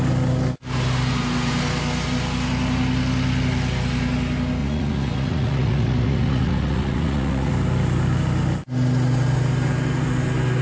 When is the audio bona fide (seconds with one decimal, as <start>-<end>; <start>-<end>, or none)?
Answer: 0.0-4.6; 7.5-10.6